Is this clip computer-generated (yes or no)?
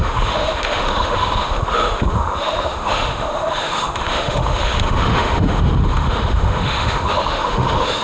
yes